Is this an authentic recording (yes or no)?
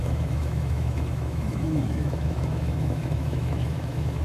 no